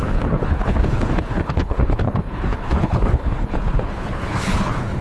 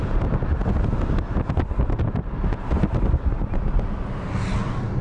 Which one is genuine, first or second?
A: second